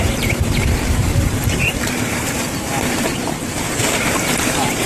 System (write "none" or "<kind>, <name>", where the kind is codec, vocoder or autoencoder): vocoder, BigVGAN v2